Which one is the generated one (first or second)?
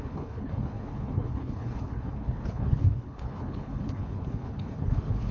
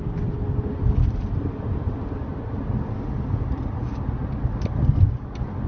first